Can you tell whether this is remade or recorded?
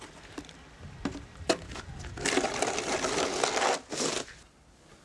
recorded